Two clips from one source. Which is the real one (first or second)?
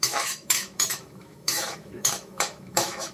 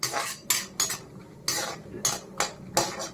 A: second